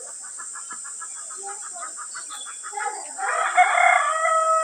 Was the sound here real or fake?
real